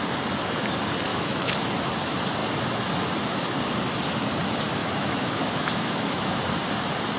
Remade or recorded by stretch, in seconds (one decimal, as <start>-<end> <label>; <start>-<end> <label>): 0.0-1.1 recorded; 1.1-1.7 remade; 1.7-4.8 recorded; 4.8-6.4 remade; 6.4-7.2 recorded